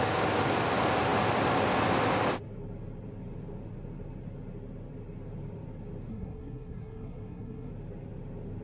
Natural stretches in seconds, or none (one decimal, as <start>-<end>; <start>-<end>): 0.0-6.1; 7.7-8.6